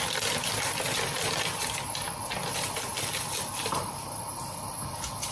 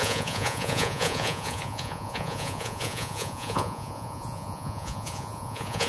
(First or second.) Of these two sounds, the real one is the first